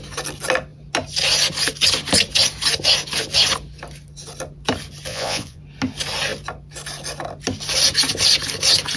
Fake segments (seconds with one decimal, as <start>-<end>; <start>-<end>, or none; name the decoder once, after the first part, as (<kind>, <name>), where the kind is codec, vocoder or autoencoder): 5.1-5.6 (vocoder, Vocos)